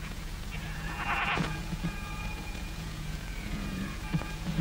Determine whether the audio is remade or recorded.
remade